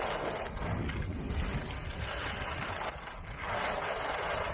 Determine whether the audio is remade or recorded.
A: recorded